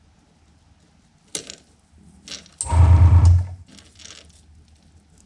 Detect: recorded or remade recorded